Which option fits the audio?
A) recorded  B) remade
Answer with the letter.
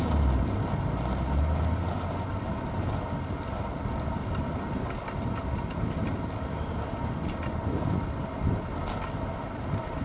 A